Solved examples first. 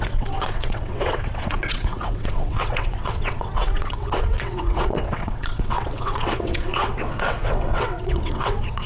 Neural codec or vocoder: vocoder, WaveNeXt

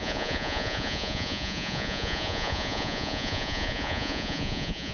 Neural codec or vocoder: vocoder, Vocos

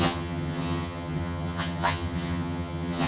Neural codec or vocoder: vocoder, HiFi-GAN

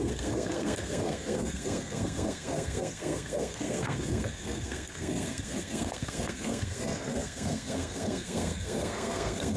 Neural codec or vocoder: codec, SNAC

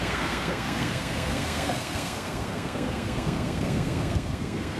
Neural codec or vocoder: codec, SNAC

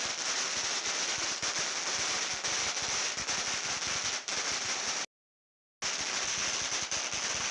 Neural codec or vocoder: none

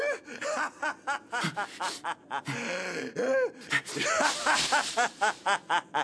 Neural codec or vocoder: none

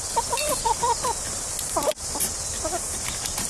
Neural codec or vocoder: none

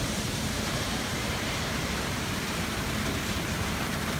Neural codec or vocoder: vocoder, BigVGAN v2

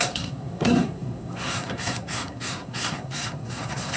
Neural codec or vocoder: codec, SNAC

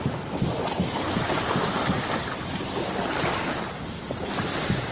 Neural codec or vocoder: none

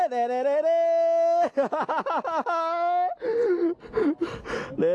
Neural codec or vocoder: none